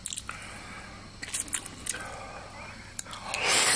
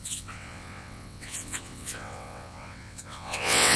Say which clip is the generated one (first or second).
second